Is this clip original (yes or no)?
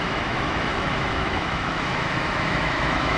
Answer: no